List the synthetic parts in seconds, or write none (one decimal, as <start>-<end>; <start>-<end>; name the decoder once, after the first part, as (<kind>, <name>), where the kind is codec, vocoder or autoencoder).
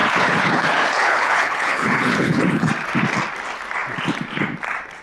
0.0-2.7 (codec, HILCodec)